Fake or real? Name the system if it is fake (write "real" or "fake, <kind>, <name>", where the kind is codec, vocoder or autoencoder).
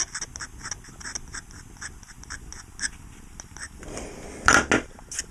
real